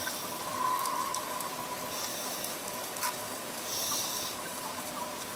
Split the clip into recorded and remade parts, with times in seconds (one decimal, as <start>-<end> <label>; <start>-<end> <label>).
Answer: 0.0-0.7 recorded; 0.7-1.5 remade; 1.5-2.1 recorded; 2.1-4.9 remade; 4.9-5.4 recorded